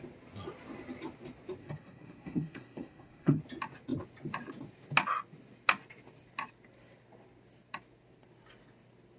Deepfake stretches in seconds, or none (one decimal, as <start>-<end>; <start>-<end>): 1.6-3.4